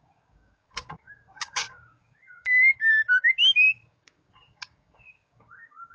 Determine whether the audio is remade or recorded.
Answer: remade